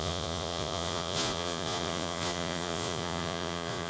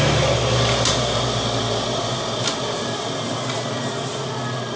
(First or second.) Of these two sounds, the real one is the second